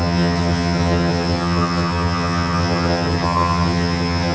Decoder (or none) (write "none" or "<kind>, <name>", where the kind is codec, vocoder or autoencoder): vocoder, HiFi-GAN